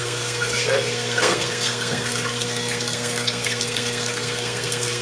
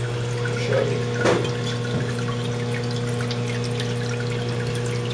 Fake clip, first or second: first